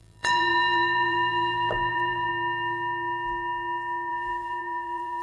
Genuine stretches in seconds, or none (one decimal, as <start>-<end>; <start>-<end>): 2.3-4.1

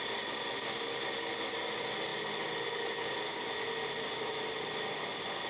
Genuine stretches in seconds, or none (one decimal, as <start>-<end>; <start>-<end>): 0.0-5.5

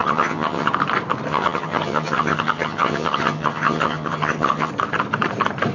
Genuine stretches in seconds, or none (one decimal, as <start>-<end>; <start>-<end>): 0.7-1.3; 4.7-5.7

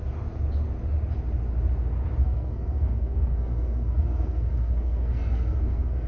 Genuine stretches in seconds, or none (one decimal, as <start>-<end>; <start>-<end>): 0.0-2.2